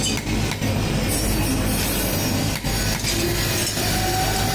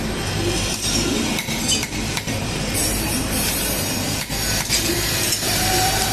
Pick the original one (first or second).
first